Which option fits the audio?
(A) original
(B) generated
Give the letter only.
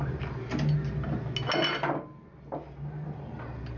A